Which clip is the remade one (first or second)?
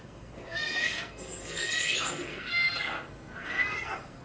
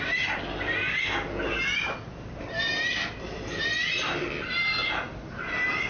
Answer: first